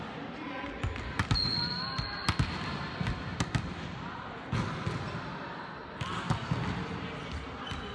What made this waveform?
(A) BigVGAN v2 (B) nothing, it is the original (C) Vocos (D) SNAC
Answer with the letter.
B